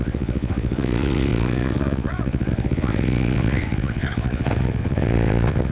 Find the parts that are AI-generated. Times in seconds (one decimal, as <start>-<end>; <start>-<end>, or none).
0.0-5.7